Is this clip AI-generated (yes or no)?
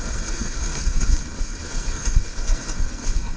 yes